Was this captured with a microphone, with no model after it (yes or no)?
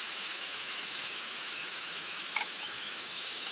no